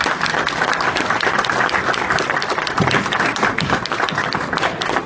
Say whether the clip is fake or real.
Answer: real